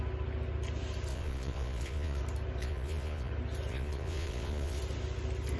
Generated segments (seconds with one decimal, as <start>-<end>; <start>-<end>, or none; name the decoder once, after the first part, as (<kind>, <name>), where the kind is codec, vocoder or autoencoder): 1.1-2.2 (vocoder, Vocos); 2.6-3.3; 3.7-4.8